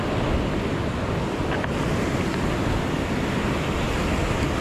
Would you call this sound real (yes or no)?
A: yes